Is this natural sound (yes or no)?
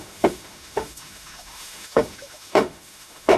no